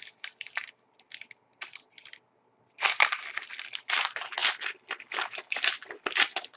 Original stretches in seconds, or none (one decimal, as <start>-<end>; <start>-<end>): 0.0-6.6